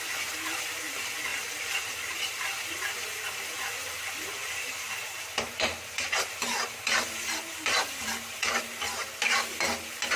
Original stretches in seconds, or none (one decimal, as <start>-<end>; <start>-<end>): 0.0-1.3; 2.4-4.4; 9.1-10.2